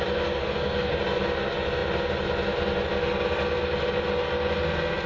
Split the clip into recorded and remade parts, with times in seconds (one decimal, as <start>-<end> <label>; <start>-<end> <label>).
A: 0.0-0.4 recorded; 0.4-1.0 remade; 1.0-5.1 recorded